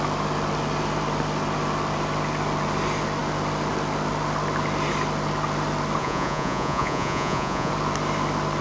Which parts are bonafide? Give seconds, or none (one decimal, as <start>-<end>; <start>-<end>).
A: 0.0-6.0; 7.7-8.6